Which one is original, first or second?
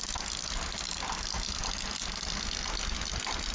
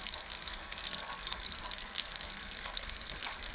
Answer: first